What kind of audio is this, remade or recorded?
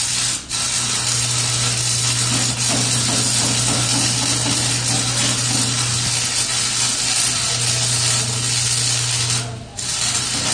recorded